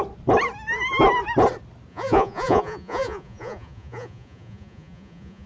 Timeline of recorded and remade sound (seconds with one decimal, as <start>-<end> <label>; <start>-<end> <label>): 0.0-1.9 recorded; 1.9-5.5 remade